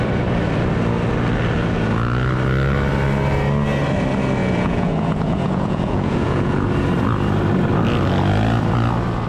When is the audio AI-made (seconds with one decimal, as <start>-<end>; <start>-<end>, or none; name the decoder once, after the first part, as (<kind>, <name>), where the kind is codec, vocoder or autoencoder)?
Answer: 4.4-6.7 (vocoder, Vocos)